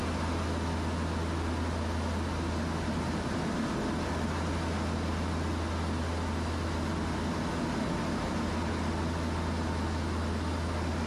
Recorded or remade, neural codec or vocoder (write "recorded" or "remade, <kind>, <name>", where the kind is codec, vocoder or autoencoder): recorded